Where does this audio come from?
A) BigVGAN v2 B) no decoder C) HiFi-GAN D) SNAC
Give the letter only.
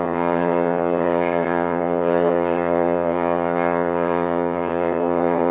C